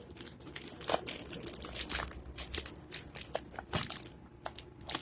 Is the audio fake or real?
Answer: real